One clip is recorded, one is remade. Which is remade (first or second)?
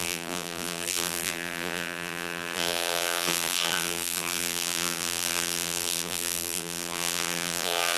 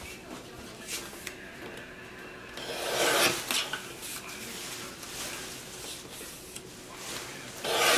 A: first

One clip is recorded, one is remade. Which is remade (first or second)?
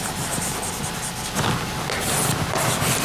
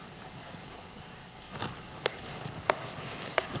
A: second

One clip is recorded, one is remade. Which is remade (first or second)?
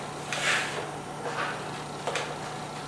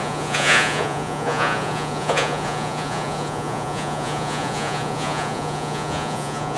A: second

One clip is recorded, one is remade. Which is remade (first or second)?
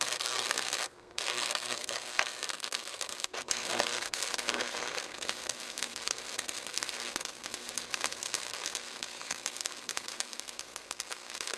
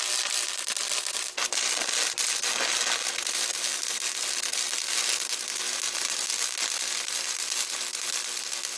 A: first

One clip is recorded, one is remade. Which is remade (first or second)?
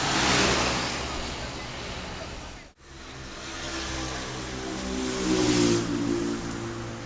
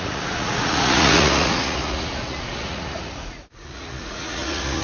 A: second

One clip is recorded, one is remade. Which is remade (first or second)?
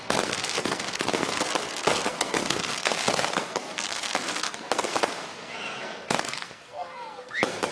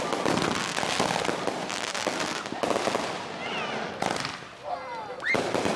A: first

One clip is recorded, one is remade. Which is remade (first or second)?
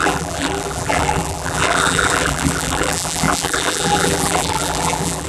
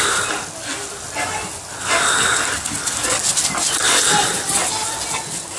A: first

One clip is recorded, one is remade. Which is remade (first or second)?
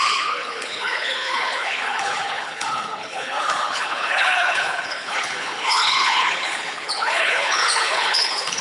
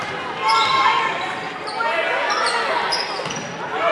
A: first